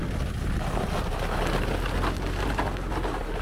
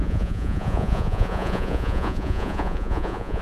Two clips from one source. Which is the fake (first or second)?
second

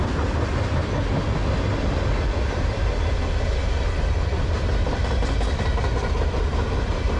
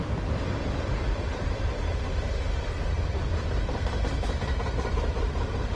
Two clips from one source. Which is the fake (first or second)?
second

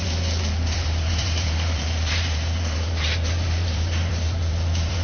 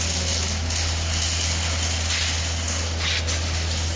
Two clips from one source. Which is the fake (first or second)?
first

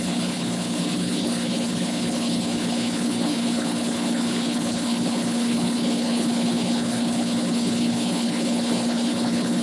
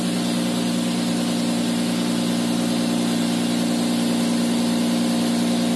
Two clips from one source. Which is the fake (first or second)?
first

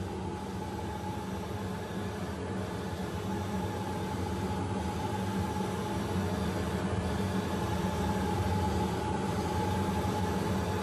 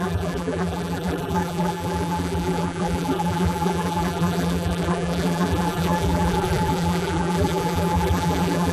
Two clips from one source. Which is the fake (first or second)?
second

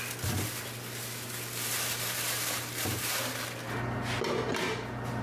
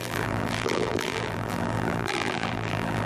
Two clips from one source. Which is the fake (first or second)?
second